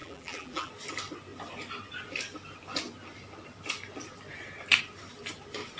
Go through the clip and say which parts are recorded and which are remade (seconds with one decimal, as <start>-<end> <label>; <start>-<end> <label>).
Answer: 0.0-0.7 remade; 0.7-5.8 recorded